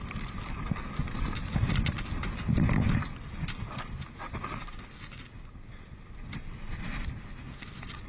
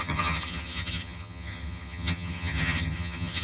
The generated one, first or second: second